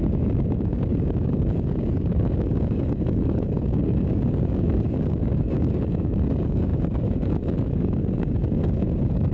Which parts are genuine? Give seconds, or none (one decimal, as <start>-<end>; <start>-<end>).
none